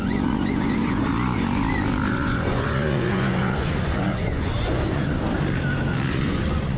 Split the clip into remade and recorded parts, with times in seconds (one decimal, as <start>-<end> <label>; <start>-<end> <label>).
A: 0.0-1.1 remade; 1.1-2.1 recorded; 2.1-5.2 remade; 5.2-6.1 recorded; 6.1-6.8 remade